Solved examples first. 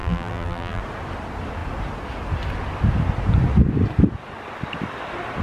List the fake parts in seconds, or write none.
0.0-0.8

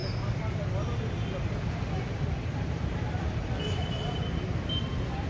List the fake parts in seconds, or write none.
none

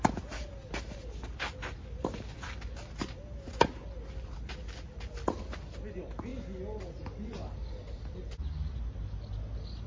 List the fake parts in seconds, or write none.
none

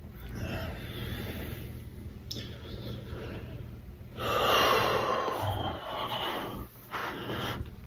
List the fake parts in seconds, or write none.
1.9-6.3; 7.0-7.9